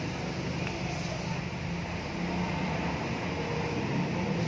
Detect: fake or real real